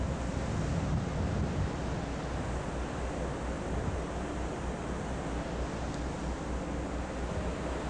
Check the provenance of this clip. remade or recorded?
recorded